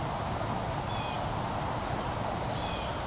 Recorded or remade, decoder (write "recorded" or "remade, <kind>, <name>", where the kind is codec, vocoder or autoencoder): recorded